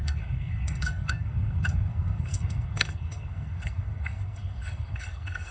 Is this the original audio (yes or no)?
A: no